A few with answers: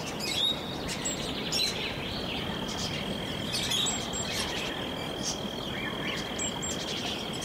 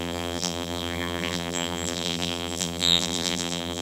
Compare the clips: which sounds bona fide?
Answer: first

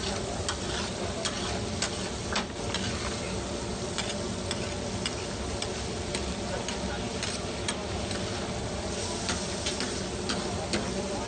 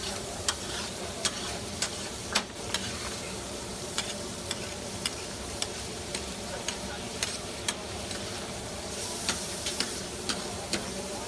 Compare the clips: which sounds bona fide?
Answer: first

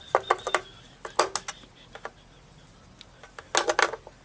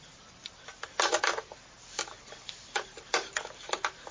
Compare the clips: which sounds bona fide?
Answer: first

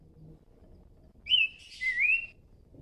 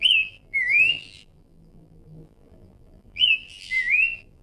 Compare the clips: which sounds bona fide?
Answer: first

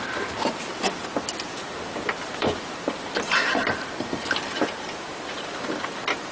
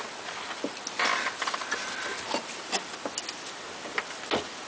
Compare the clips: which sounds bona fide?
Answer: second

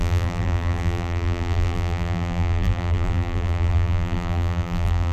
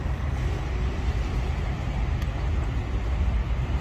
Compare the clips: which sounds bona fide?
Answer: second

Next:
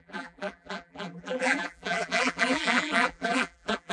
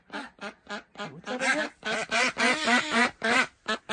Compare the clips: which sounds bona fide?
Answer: second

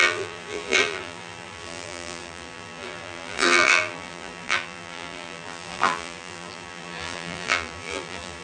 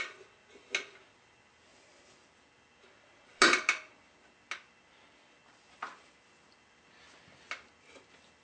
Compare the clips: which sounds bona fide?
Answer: second